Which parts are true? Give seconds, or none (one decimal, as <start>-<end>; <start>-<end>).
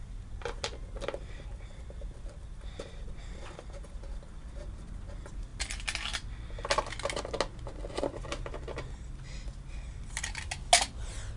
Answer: 0.0-11.4